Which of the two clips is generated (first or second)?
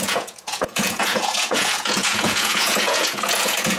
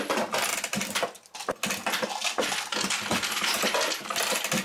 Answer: first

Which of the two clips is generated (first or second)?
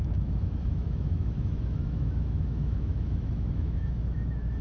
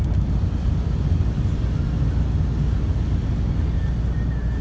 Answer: first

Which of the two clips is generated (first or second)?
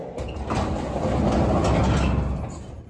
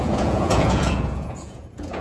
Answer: second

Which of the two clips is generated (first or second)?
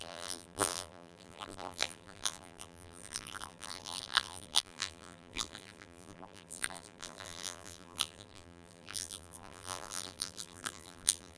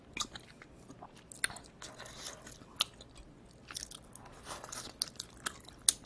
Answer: first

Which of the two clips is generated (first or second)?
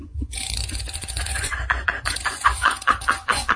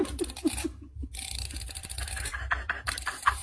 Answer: first